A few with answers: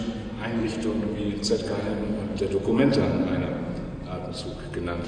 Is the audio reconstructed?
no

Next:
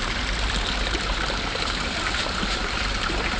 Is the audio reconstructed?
no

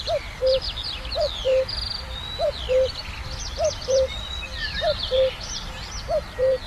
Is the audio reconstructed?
yes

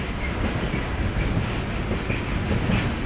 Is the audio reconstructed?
no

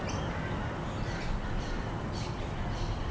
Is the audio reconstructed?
yes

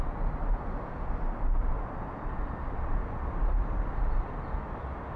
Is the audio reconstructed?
no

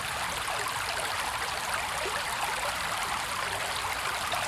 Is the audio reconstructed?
no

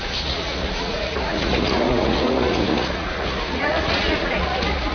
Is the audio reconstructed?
yes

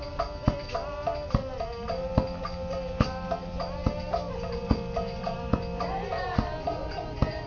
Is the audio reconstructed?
no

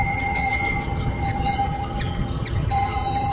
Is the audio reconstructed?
yes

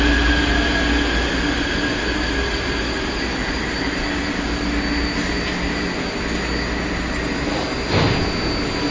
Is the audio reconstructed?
no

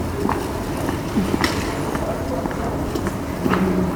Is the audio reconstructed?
no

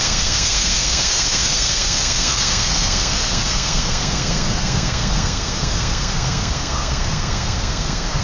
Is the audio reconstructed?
yes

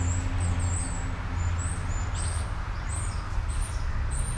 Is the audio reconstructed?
no